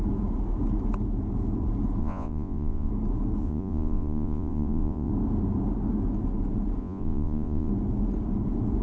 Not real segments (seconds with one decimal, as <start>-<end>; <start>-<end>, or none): 2.0-2.9; 3.4-5.1; 6.8-7.7